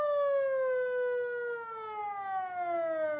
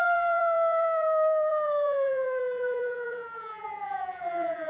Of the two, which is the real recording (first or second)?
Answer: first